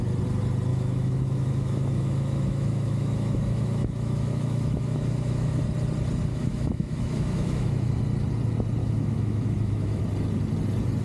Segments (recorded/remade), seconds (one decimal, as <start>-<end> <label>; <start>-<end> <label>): 0.0-0.7 recorded; 0.7-5.6 remade; 5.6-6.3 recorded; 6.3-7.9 remade; 7.9-8.8 recorded; 8.8-10.0 remade; 10.0-11.0 recorded